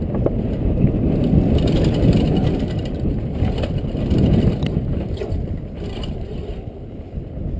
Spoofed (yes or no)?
no